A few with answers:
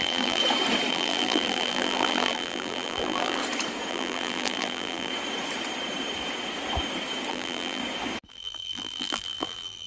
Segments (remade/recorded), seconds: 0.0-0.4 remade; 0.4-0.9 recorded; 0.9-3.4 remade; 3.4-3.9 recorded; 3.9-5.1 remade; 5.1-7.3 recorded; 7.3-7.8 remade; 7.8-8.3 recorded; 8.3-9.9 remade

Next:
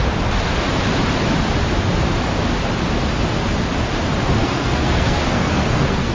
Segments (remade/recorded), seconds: 0.0-4.4 recorded; 4.4-6.1 remade